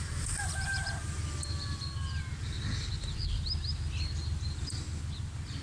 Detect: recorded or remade remade